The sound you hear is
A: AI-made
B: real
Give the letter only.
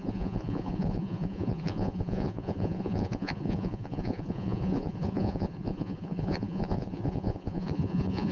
A